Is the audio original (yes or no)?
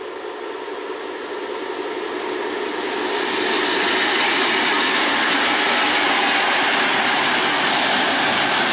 yes